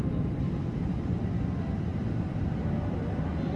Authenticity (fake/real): real